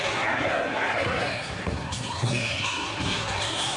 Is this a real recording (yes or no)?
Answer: no